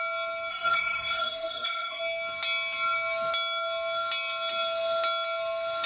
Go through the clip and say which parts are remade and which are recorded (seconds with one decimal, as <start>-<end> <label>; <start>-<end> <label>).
0.0-0.5 recorded; 0.5-2.0 remade; 2.0-5.9 recorded